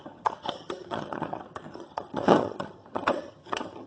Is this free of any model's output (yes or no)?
no